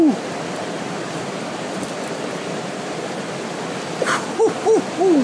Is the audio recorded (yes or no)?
yes